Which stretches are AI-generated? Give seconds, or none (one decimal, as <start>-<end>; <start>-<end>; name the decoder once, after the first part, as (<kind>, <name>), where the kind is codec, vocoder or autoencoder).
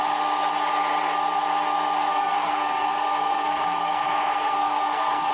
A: 2.1-5.3 (codec, SNAC)